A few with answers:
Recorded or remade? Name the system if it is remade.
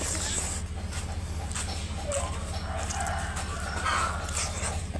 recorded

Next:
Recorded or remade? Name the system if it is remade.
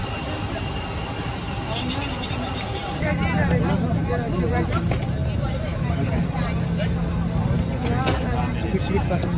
recorded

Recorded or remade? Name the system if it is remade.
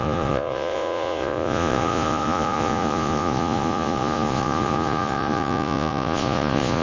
remade, vocoder, Vocos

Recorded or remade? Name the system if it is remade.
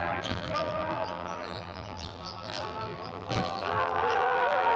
remade, vocoder, BigVGAN v2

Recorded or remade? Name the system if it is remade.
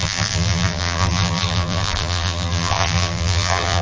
remade, vocoder, BigVGAN v2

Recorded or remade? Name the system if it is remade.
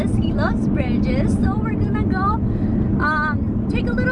recorded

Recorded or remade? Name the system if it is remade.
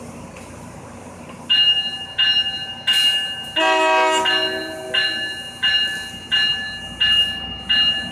recorded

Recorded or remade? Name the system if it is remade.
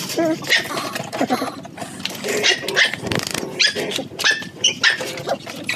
recorded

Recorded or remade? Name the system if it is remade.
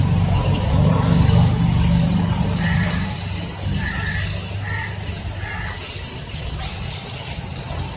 recorded